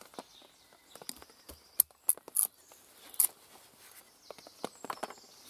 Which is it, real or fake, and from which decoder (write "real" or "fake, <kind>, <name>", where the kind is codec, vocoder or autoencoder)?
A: real